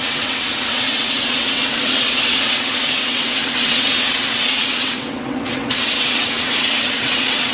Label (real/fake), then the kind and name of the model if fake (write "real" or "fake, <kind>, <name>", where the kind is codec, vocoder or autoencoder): fake, vocoder, WaveNeXt